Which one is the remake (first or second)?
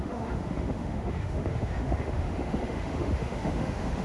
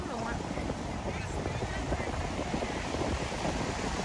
first